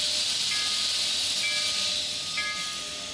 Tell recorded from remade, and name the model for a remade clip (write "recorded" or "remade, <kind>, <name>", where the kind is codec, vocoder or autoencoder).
recorded